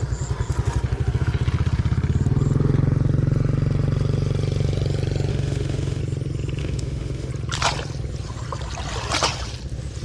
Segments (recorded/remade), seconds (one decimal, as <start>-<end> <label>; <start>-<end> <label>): 0.0-5.3 recorded; 5.3-6.0 remade; 6.0-6.6 recorded; 6.6-7.3 remade; 7.3-10.0 recorded